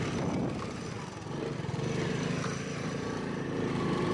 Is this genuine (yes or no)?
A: yes